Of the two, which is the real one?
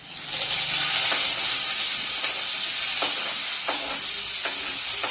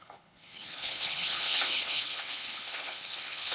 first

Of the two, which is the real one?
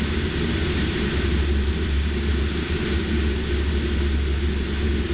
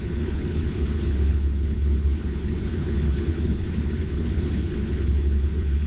first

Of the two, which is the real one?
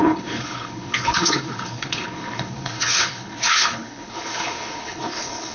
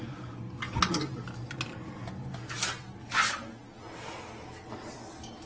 second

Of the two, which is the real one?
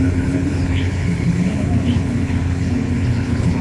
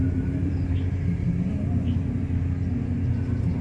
second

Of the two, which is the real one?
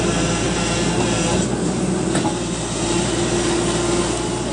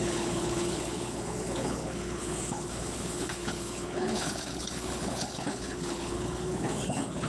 first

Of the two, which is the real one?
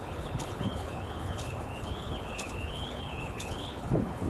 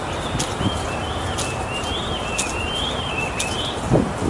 second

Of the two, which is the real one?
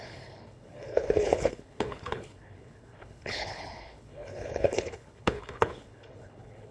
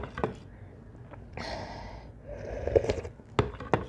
second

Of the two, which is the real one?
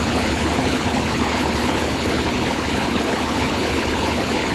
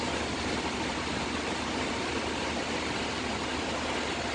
second